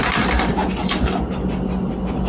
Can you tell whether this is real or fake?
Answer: real